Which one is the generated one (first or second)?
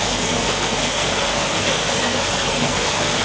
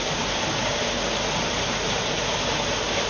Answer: first